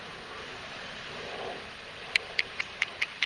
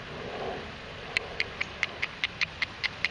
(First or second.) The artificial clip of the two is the first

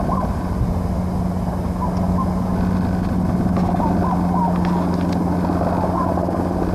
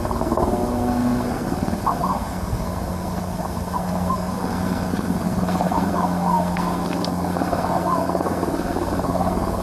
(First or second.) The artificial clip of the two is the second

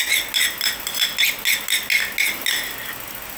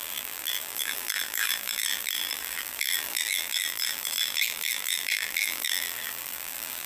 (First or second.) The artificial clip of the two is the second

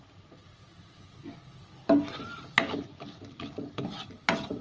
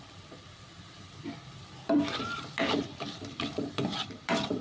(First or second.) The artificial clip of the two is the second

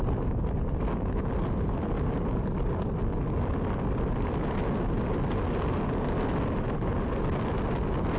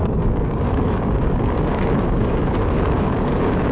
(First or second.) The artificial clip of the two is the second